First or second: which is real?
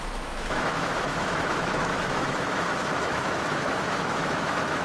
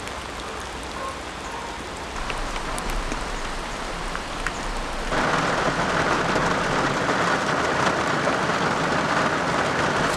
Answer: second